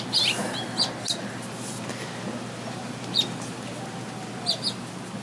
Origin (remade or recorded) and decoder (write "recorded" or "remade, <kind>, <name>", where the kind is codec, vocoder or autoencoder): recorded